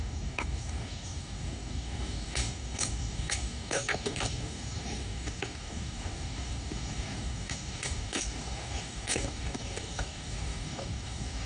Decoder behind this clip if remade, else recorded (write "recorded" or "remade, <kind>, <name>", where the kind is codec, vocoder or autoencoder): remade, codec, DAC